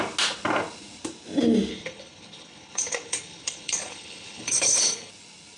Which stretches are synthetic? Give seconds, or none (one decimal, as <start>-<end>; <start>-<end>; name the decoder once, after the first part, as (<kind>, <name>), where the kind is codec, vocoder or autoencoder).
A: 1.7-5.1 (codec, HILCodec)